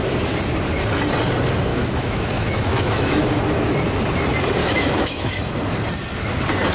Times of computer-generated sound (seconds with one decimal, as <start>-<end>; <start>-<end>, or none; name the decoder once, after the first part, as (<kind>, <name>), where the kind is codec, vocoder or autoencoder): 1.7-3.2 (autoencoder, DAC-VAE); 4.6-5.4